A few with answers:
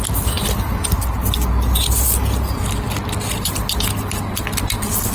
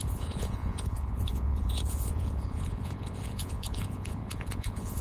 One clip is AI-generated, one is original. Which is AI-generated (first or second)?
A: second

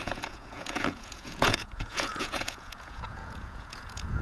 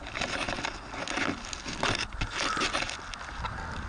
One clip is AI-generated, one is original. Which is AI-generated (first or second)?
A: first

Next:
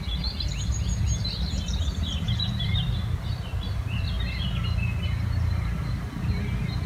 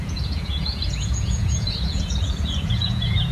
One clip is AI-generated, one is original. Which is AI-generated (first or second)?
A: second